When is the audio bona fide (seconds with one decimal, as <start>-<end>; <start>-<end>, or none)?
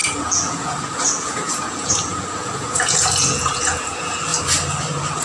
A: 4.3-5.2